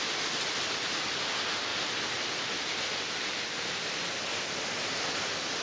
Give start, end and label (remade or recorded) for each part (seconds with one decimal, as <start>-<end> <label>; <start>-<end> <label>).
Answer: 0.0-1.7 recorded; 1.7-2.2 remade; 2.2-5.6 recorded